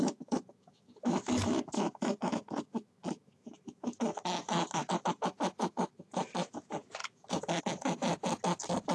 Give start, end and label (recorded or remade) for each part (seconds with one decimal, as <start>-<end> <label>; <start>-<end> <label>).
0.0-8.1 remade; 8.1-8.9 recorded